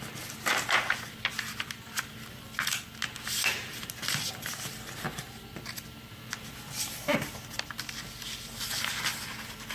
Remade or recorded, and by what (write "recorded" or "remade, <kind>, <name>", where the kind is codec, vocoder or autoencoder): recorded